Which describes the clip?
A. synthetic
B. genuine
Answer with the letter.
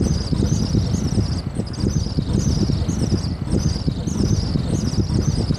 B